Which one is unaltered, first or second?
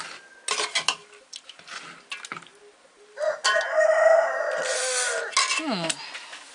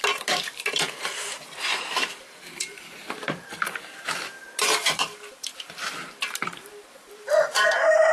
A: first